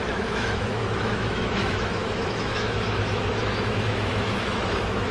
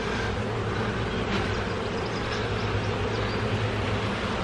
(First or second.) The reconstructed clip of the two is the first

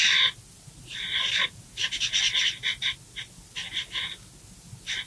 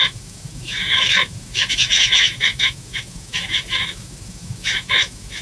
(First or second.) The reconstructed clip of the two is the second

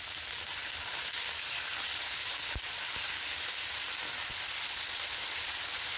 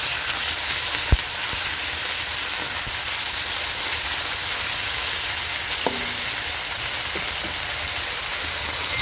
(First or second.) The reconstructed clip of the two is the first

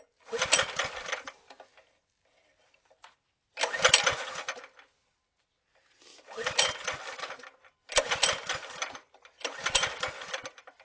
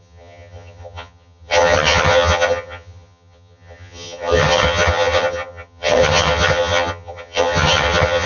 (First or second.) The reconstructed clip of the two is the second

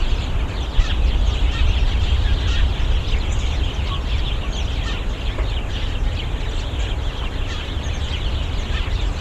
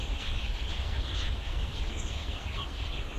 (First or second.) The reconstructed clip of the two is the second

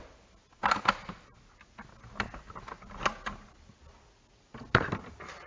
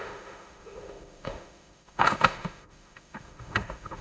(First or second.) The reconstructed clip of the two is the second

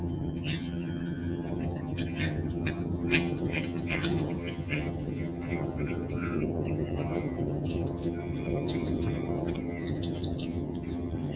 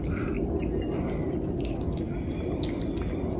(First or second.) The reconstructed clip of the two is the first